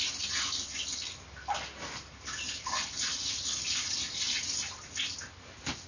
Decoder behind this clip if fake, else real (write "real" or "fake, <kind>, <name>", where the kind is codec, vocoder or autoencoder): real